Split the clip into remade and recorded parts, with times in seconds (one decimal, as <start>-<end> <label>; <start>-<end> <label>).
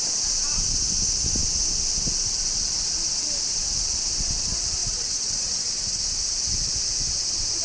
0.0-4.8 recorded; 4.8-6.0 remade; 6.0-7.6 recorded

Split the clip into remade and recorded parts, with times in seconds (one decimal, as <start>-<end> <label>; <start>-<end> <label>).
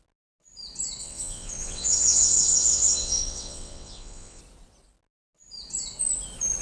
0.0-1.0 recorded; 1.0-4.4 remade; 4.4-6.6 recorded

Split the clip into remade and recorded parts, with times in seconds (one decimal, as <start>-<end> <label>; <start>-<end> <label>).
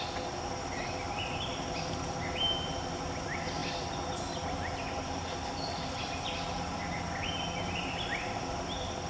0.0-9.1 recorded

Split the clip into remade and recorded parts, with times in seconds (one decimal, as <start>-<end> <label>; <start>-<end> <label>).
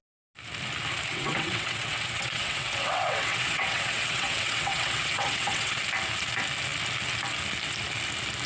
0.0-1.1 recorded; 1.1-5.8 remade; 5.8-8.5 recorded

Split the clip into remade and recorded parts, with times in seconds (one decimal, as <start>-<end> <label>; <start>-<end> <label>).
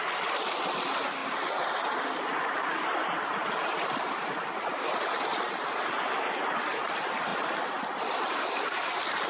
0.0-9.3 recorded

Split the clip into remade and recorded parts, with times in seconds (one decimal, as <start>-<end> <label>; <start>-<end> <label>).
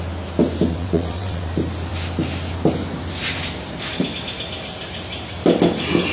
0.0-0.7 recorded; 0.7-1.5 remade; 1.5-6.1 recorded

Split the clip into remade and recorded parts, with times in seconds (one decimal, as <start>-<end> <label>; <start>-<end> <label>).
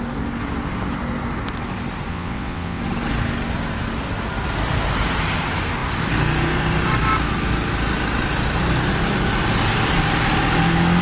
0.0-2.1 recorded; 2.1-2.8 remade; 2.8-11.0 recorded